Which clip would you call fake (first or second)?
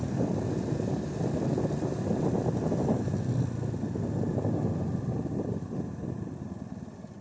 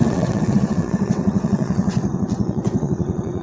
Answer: second